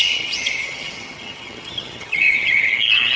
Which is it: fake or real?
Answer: fake